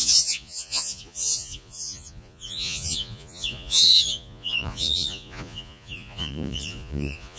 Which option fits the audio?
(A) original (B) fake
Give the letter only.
B